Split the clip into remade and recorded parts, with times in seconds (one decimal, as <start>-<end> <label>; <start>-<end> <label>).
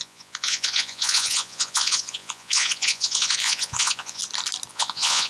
0.0-4.2 remade; 4.2-4.7 recorded; 4.7-5.3 remade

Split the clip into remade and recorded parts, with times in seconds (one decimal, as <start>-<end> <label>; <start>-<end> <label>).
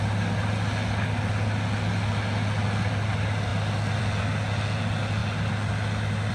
0.0-6.3 recorded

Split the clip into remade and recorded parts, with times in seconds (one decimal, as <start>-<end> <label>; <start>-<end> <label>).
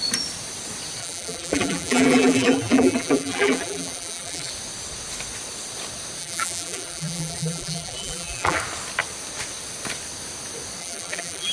0.0-1.0 recorded; 1.0-4.5 remade; 4.5-6.2 recorded; 6.2-8.6 remade; 8.6-10.8 recorded; 10.8-11.5 remade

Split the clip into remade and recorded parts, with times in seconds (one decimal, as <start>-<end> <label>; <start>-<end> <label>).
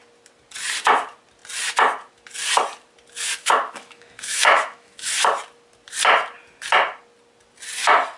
0.0-3.4 recorded; 3.4-5.1 remade; 5.1-8.2 recorded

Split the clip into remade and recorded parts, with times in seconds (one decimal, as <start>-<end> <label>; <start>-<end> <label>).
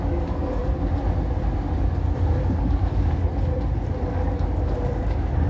0.0-0.6 remade; 0.6-2.2 recorded; 2.2-3.3 remade; 3.3-4.1 recorded; 4.1-5.5 remade